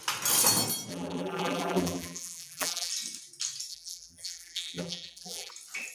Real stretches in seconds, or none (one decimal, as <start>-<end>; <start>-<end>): 0.0-0.9; 2.9-3.7; 5.5-5.9